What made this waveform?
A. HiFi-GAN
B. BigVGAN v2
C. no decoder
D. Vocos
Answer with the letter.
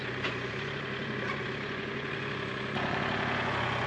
D